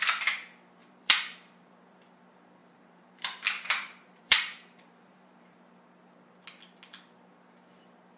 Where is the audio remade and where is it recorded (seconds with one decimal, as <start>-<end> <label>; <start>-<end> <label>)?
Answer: 0.0-0.8 recorded; 0.8-1.7 remade; 1.7-2.6 recorded; 2.6-5.5 remade; 5.5-8.2 recorded